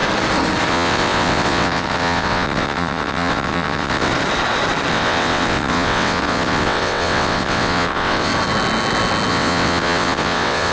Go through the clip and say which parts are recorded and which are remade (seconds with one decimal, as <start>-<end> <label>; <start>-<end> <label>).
0.0-0.7 recorded; 0.7-4.1 remade; 4.1-4.9 recorded; 4.9-8.3 remade; 8.3-9.3 recorded; 9.3-10.7 remade